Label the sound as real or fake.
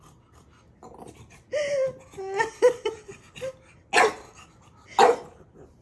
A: real